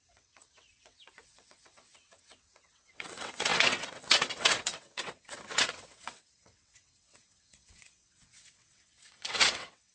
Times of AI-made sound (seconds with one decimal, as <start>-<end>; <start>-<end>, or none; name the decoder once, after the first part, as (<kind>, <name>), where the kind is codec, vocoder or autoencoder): 0.0-9.9 (vocoder, WaveNeXt)